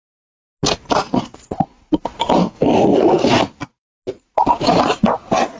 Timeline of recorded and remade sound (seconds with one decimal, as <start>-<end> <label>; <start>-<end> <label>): 0.0-2.4 recorded; 2.4-3.3 remade; 3.3-5.6 recorded

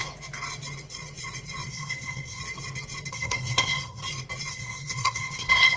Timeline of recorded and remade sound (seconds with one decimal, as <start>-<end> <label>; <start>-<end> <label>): 0.0-1.7 recorded; 1.7-2.4 remade; 2.4-3.1 recorded; 3.1-4.0 remade; 4.0-4.5 recorded; 4.5-5.8 remade

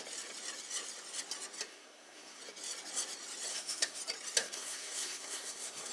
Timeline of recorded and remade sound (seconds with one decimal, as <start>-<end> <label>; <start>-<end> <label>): 0.0-1.7 recorded; 1.7-2.4 remade; 2.4-3.5 recorded; 3.5-4.0 remade; 4.0-4.4 recorded; 4.4-5.9 remade

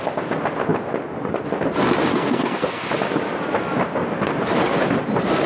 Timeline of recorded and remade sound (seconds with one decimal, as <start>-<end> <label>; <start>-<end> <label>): 0.0-2.1 recorded; 2.1-2.9 remade; 2.9-5.5 recorded